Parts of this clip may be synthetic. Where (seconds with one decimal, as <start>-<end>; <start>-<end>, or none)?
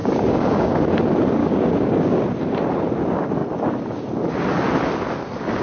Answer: 0.0-0.8; 1.4-2.2